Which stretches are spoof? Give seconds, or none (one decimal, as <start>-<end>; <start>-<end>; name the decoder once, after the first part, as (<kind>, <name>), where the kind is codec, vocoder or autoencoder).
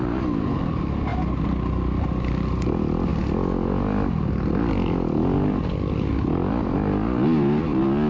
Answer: none